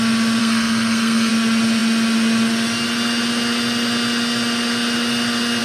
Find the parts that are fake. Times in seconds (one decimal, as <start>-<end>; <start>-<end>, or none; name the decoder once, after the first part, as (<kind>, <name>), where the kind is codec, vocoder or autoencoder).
0.4-1.3 (codec, SNAC)